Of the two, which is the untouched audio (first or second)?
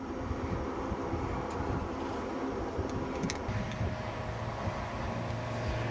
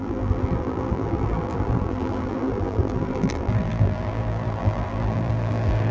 first